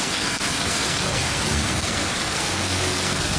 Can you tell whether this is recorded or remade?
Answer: remade